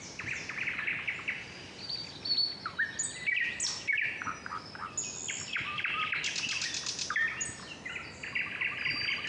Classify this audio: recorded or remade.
recorded